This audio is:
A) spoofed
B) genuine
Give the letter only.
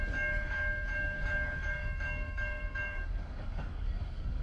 A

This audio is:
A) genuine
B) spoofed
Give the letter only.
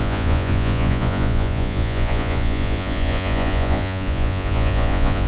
B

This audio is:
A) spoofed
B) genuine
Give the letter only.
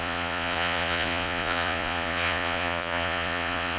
A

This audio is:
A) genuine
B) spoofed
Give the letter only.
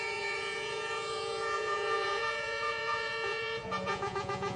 B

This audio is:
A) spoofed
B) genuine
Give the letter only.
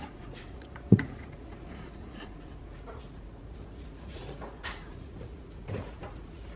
A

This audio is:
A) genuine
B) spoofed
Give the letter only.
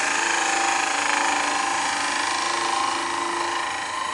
A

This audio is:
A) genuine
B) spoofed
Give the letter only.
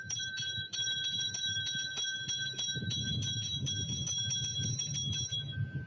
B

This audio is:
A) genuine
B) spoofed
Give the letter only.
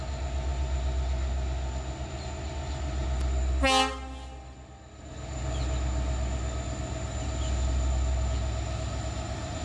A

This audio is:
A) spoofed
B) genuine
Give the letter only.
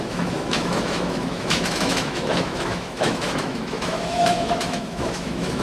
A